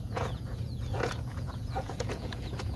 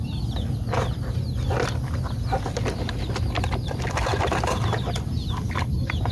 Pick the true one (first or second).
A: second